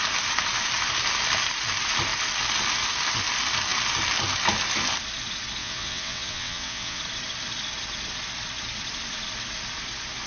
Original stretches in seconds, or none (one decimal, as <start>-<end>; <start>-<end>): 0.0-5.6; 7.0-10.3